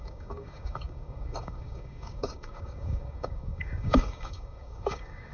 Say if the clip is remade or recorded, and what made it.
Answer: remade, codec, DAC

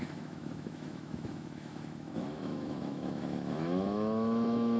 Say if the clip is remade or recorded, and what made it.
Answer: remade, autoencoder, DAC-VAE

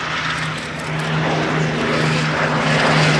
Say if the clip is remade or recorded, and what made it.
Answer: recorded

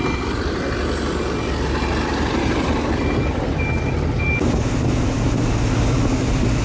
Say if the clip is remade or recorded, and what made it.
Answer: recorded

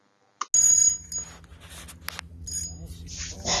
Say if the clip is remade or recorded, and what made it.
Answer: recorded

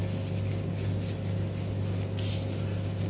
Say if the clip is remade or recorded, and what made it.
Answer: recorded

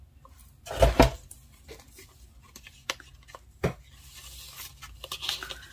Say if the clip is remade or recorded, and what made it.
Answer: recorded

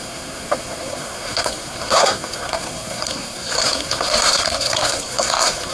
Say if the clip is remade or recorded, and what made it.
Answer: remade, codec, SNAC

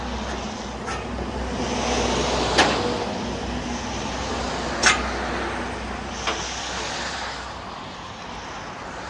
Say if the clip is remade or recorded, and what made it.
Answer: recorded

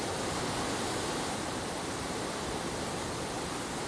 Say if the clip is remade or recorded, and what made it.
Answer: recorded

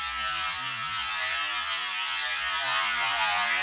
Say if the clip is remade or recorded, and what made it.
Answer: recorded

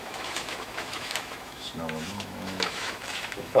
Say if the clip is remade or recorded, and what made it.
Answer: remade, autoencoder, DAC-VAE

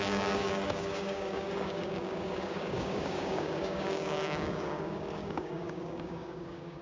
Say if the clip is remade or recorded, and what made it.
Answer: remade, codec, DAC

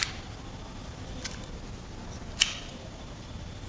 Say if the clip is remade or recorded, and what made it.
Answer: recorded